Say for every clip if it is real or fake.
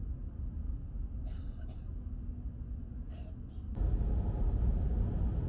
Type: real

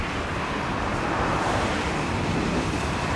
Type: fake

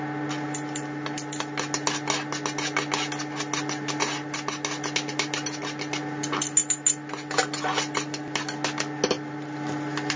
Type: real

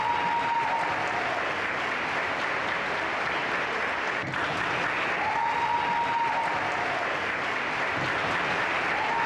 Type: real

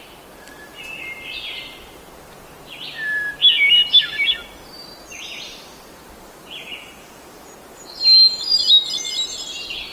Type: real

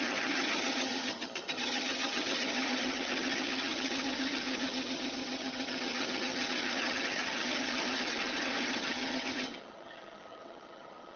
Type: fake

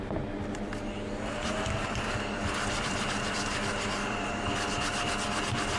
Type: fake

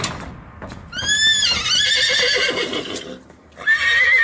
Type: real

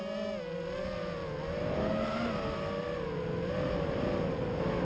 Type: real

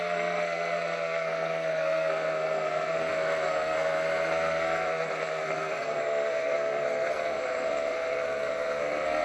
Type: fake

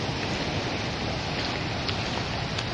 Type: real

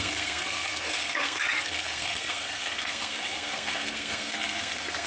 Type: fake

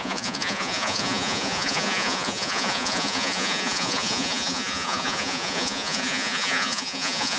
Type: fake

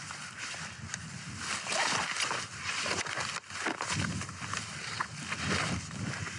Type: real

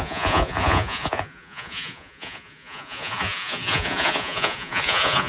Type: fake